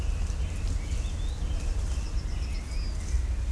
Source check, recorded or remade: recorded